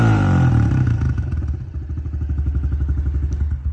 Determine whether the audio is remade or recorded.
recorded